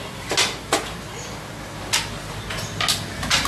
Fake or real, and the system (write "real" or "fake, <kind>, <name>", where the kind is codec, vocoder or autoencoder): real